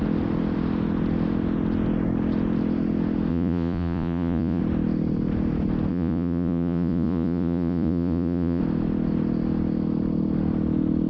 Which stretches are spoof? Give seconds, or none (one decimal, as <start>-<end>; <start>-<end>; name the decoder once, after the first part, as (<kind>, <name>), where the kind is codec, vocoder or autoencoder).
3.3-4.6 (vocoder, Vocos); 5.9-8.6